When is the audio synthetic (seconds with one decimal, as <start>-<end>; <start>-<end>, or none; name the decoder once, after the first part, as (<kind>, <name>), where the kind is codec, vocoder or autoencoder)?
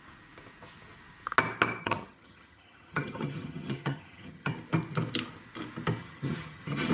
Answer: 1.8-4.5 (vocoder, HiFi-GAN); 6.0-6.9